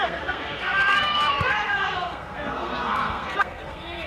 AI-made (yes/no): yes